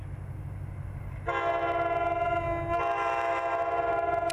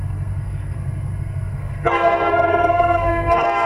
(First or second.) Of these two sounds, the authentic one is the first